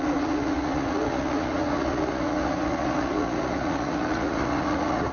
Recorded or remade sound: remade